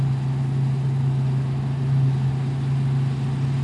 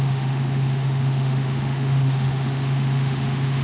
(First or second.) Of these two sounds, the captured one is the first